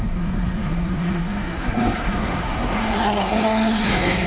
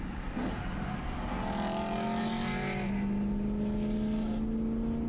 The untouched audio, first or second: second